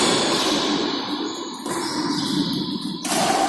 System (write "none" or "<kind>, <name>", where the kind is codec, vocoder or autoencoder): none